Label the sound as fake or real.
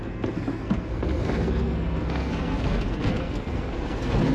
fake